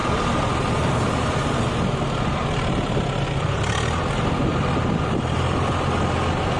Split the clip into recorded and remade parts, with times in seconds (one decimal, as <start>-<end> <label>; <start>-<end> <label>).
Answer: 0.0-6.6 recorded